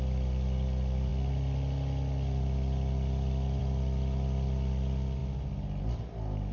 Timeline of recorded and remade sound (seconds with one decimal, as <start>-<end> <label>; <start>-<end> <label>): 0.0-6.5 recorded